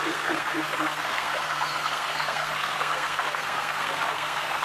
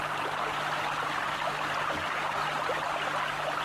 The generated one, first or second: first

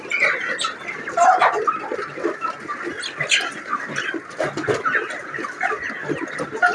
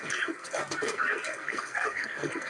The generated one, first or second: second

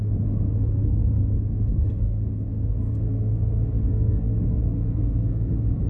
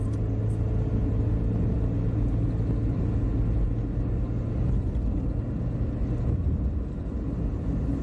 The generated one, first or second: first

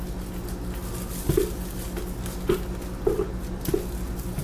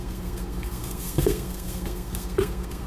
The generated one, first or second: second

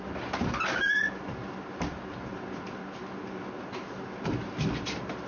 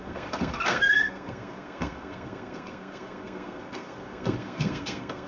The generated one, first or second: second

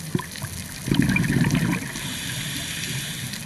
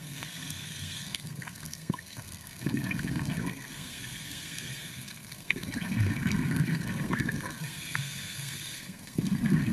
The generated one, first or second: second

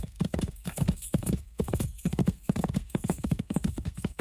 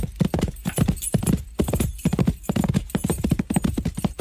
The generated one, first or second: first